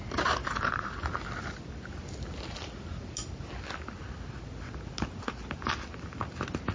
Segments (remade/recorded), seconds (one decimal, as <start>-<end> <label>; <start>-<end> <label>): 0.0-6.7 recorded